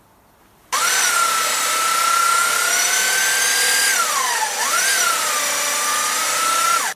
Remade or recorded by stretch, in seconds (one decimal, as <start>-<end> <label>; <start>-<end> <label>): 0.0-7.0 recorded